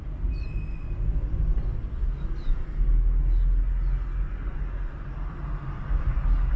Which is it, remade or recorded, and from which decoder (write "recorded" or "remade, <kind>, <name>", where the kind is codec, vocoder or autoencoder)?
recorded